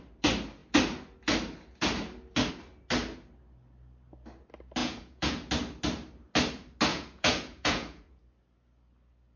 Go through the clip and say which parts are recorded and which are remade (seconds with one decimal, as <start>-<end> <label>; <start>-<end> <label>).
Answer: 0.0-4.8 recorded; 4.8-5.5 remade; 5.5-6.9 recorded; 6.9-8.2 remade; 8.2-9.4 recorded